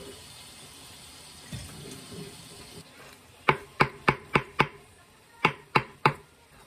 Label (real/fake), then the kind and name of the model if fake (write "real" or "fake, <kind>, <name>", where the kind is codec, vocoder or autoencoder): fake, vocoder, BigVGAN v2